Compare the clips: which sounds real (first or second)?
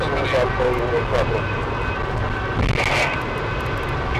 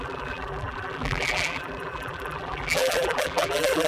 first